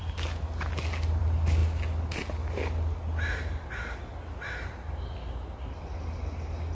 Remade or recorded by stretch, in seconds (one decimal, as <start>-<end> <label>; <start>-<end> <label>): 0.0-6.7 recorded